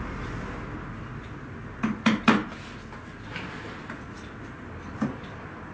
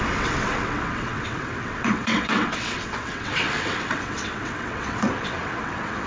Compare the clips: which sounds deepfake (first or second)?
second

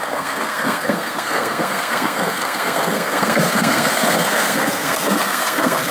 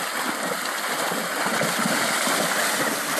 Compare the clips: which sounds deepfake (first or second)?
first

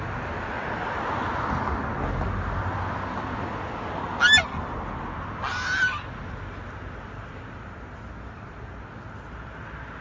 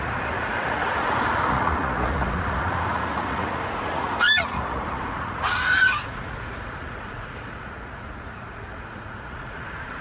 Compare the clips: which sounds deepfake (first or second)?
second